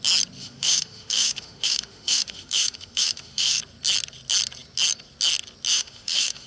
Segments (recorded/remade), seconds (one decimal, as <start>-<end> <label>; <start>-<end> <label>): 0.0-0.4 recorded; 0.4-3.6 remade; 3.6-5.7 recorded; 5.7-6.5 remade